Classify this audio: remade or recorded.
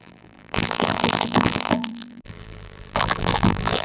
remade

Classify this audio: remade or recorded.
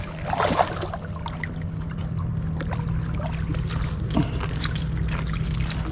recorded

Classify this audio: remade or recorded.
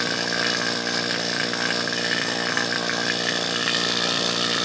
recorded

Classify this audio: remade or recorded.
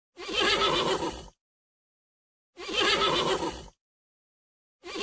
recorded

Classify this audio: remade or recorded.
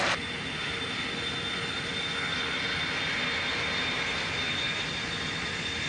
recorded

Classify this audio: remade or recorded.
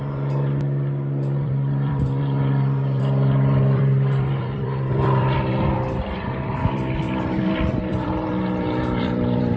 remade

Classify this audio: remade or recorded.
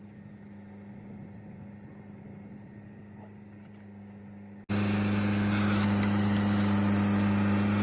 recorded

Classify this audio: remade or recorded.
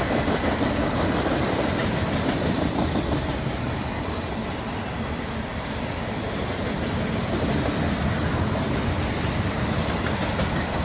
remade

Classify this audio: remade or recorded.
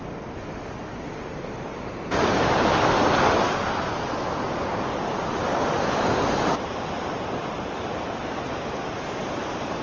recorded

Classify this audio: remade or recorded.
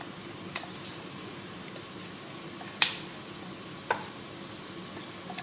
remade